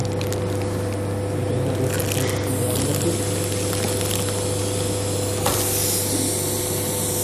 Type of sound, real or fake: real